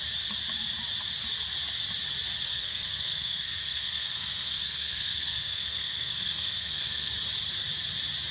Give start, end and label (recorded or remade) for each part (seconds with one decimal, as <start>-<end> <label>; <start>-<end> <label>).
0.0-2.5 recorded; 2.5-7.1 remade; 7.1-8.3 recorded

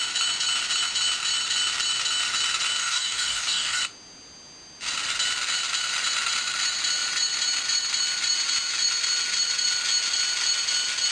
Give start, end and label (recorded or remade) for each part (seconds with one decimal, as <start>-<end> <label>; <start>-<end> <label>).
0.0-2.8 recorded; 2.8-3.8 remade; 3.8-11.1 recorded

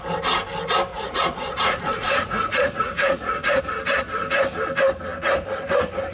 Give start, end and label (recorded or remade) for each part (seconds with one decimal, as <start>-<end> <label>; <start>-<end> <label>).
0.0-0.9 recorded; 0.9-3.6 remade; 3.6-6.1 recorded